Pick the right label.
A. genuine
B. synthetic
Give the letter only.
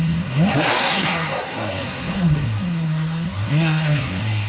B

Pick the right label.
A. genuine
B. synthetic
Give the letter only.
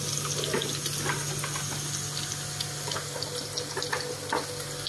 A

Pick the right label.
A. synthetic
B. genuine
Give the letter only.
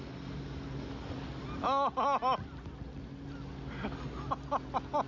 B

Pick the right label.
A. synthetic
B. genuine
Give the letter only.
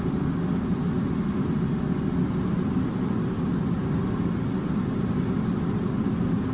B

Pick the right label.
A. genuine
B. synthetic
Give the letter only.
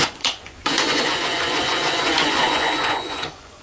B